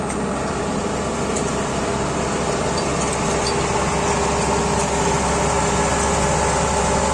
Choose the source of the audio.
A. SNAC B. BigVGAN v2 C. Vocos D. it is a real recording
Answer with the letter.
D